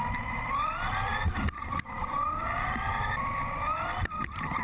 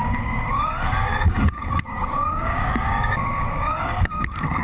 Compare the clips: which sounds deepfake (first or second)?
second